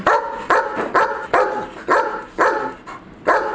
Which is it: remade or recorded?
recorded